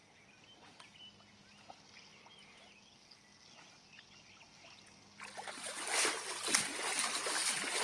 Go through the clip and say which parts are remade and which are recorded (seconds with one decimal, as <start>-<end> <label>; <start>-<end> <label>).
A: 0.0-7.8 recorded